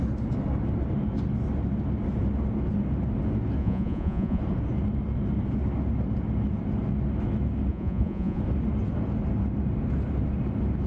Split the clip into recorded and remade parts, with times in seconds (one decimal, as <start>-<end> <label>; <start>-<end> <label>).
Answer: 0.0-3.6 recorded; 3.6-4.4 remade; 4.4-7.7 recorded; 7.7-8.4 remade; 8.4-10.9 recorded